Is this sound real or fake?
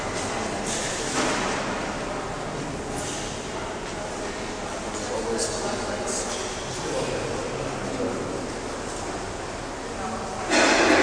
real